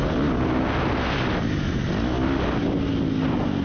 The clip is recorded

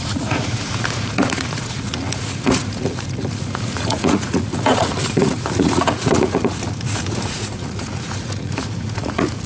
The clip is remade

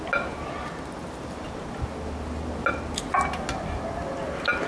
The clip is recorded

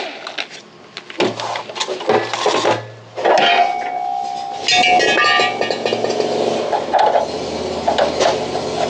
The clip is recorded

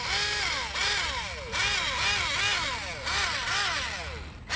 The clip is recorded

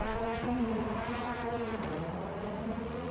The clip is remade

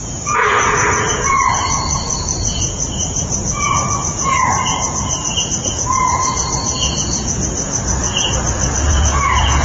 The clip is remade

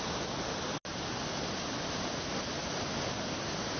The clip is recorded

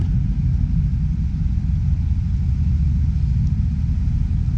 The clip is recorded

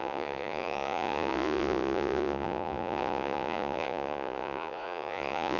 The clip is remade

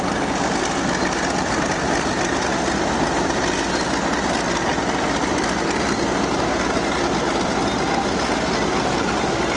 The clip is recorded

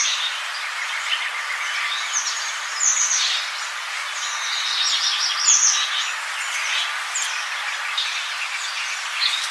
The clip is recorded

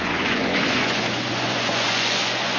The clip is remade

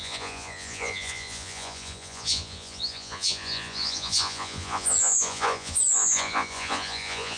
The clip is remade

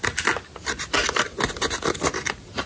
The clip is recorded